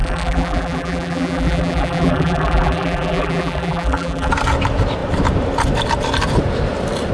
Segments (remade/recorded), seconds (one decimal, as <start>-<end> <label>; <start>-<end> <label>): 0.0-4.3 remade; 4.3-7.1 recorded